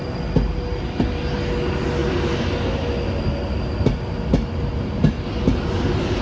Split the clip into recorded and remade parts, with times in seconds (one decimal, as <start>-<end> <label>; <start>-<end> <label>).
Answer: 0.0-6.2 recorded